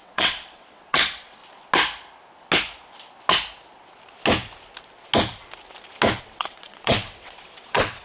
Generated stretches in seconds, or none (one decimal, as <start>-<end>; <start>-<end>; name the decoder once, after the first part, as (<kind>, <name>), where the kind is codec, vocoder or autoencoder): 0.0-1.4 (vocoder, WaveNeXt); 6.2-8.0